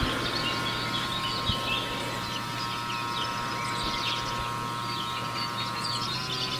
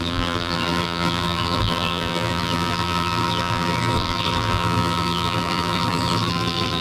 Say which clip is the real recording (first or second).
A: first